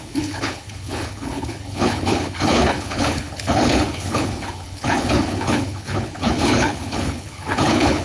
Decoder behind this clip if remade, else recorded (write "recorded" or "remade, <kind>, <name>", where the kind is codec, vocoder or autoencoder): remade, codec, HILCodec